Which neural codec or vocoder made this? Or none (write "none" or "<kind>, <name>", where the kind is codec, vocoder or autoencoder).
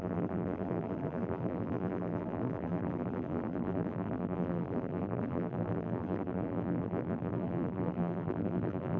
vocoder, BigVGAN v2